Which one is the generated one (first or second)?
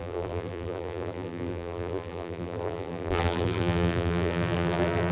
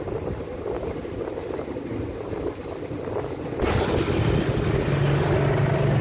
first